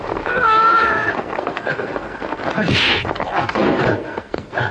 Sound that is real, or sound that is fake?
fake